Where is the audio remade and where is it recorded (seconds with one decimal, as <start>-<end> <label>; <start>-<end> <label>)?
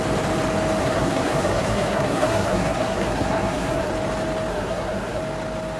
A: 0.0-0.8 recorded; 0.8-3.9 remade; 3.9-4.5 recorded; 4.5-5.2 remade; 5.2-5.8 recorded